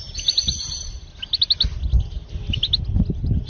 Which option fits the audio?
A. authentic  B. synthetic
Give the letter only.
A